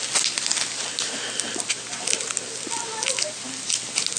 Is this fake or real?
real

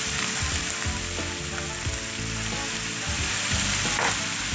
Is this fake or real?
real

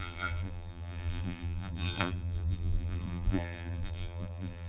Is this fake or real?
fake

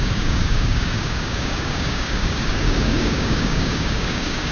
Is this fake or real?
fake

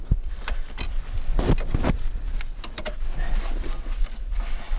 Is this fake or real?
real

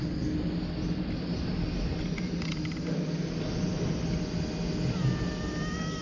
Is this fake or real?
real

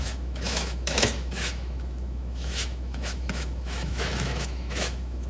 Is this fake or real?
fake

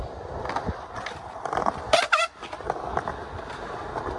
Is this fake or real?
real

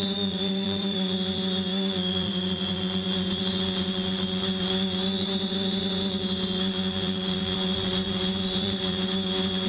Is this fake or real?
fake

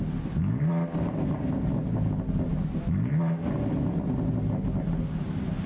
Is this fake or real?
real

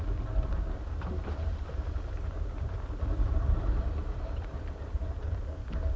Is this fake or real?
fake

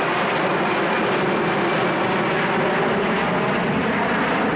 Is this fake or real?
real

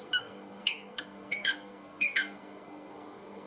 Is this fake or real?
fake